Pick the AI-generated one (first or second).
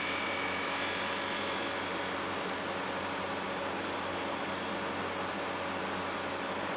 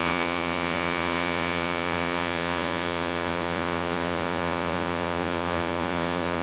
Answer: second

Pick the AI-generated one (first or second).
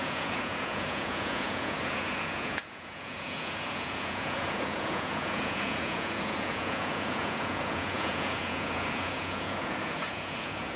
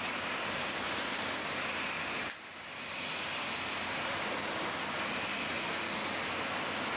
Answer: first